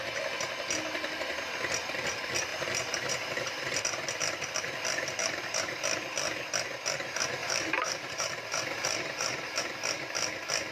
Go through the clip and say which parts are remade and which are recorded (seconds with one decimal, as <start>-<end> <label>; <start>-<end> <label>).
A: 0.0-2.5 recorded; 2.5-3.8 remade; 3.8-5.2 recorded; 5.2-5.8 remade; 5.8-7.4 recorded; 7.4-9.6 remade; 9.6-10.7 recorded